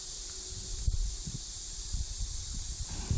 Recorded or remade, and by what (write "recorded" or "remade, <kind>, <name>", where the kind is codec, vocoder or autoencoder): recorded